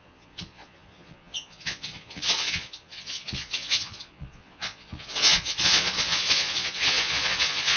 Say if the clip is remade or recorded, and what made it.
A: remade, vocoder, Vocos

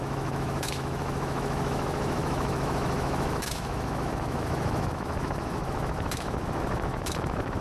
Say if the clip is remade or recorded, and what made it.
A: remade, autoencoder, DAC-VAE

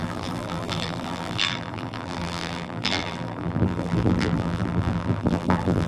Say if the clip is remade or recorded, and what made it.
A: remade, vocoder, BigVGAN v2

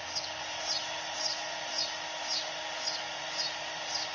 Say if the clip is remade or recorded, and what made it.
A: recorded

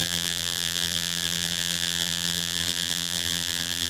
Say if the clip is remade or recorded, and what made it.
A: remade, vocoder, BigVGAN v2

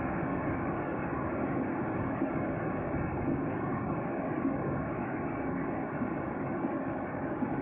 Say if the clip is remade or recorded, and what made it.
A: remade, codec, DAC